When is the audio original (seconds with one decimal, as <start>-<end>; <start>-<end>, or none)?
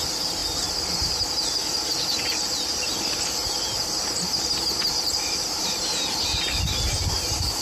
0.4-2.4